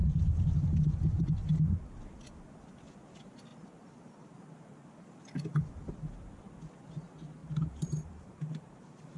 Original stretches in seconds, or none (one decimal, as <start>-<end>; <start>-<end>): 0.0-7.4